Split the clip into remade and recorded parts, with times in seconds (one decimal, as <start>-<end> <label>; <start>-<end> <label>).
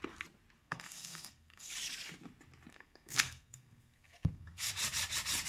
0.0-0.6 recorded; 0.6-1.7 remade; 1.7-2.7 recorded; 2.7-4.7 remade; 4.7-5.5 recorded